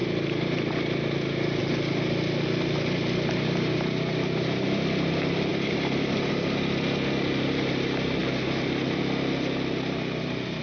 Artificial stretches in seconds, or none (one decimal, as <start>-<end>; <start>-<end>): 0.0-1.6; 5.5-6.3